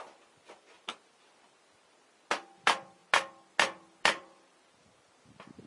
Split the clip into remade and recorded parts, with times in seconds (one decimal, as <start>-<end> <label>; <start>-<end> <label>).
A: 0.0-5.7 recorded